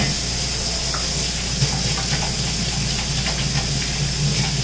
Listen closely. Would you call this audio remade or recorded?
recorded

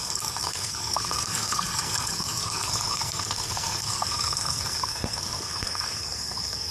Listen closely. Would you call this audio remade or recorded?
remade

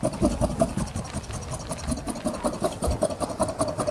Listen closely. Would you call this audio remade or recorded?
recorded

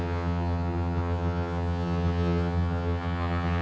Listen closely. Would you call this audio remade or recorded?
remade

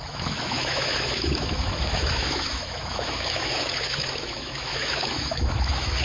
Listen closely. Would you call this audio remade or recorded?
remade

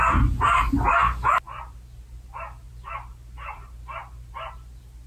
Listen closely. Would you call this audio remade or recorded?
recorded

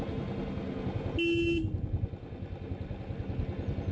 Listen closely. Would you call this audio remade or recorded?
recorded